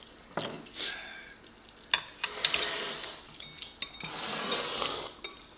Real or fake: real